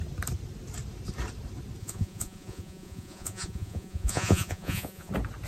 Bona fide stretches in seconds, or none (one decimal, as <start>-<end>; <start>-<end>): 0.0-1.8; 5.1-5.5